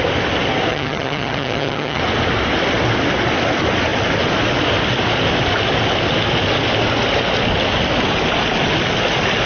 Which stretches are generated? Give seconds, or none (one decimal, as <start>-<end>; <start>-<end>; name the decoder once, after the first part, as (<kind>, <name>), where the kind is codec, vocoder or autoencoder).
0.7-2.0 (vocoder, HiFi-GAN)